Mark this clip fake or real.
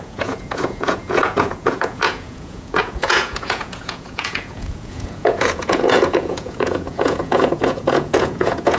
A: fake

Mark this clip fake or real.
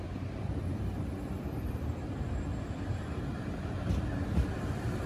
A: fake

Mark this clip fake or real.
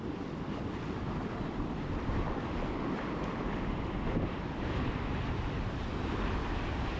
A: real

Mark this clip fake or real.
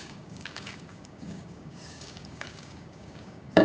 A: fake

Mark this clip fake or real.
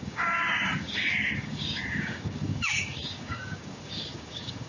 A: fake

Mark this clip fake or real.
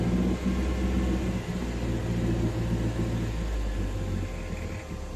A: real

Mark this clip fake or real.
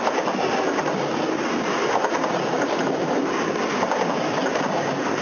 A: real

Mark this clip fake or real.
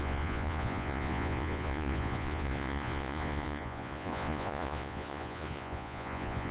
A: fake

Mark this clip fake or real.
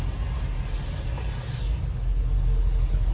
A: real